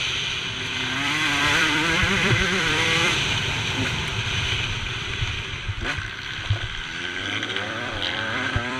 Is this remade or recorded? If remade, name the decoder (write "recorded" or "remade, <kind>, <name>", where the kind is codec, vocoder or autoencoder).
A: remade, vocoder, BigVGAN v2